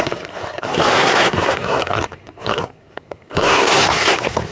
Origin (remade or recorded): remade